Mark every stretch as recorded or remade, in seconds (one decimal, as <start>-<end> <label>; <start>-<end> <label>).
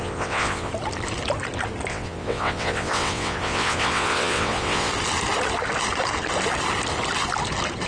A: 0.0-0.7 remade; 0.7-1.9 recorded; 1.9-4.9 remade; 4.9-7.9 recorded